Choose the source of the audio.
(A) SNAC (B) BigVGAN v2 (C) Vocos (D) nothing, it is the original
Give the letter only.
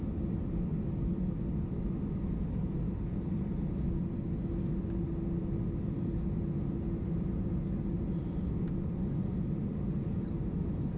D